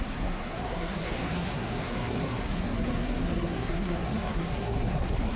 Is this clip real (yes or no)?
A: no